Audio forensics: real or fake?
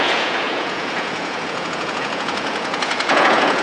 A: fake